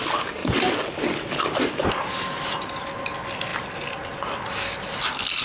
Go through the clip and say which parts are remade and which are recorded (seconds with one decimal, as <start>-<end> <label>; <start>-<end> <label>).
0.0-0.4 recorded; 0.4-1.9 remade; 1.9-5.4 recorded